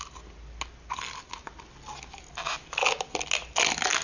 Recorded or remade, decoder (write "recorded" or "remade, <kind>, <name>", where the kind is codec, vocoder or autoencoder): recorded